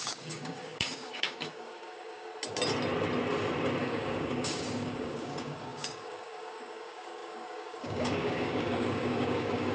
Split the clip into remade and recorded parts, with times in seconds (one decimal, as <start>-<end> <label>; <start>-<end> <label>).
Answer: 0.0-2.3 remade; 2.3-3.8 recorded; 3.8-9.7 remade